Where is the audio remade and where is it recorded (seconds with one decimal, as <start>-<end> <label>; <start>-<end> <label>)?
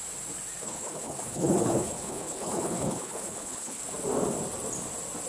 0.0-0.6 recorded; 0.6-3.8 remade; 3.8-5.3 recorded